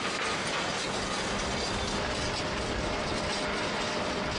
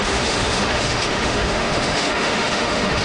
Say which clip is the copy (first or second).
second